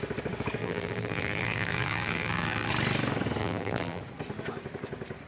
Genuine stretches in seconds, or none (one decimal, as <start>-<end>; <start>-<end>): 0.0-0.6; 2.7-3.4; 4.0-5.3

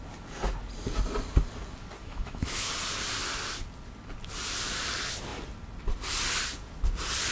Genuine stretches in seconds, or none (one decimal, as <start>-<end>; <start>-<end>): 0.0-2.0; 2.7-7.3

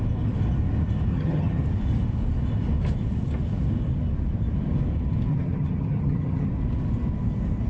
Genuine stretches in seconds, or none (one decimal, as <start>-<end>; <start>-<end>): 0.0-1.1; 1.6-5.3; 6.5-7.7

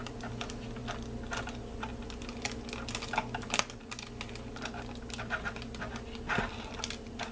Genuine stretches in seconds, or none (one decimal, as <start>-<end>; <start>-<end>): 0.0-7.3